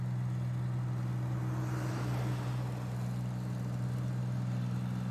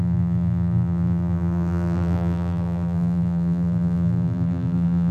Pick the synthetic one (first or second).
second